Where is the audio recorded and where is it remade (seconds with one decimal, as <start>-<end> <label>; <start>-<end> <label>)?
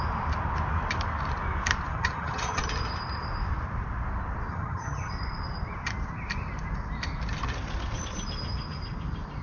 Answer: 0.0-1.9 recorded; 1.9-2.6 remade; 2.6-4.5 recorded; 4.5-5.1 remade; 5.1-9.4 recorded